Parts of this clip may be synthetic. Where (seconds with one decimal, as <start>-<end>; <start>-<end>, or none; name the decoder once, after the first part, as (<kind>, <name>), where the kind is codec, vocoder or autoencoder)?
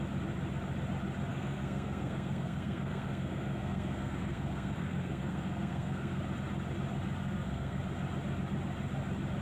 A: 1.3-6.2 (codec, SNAC); 7.2-7.8